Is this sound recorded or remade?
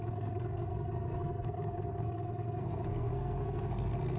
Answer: remade